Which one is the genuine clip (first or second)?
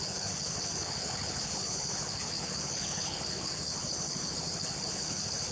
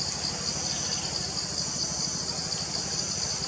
second